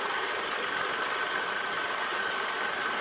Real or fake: real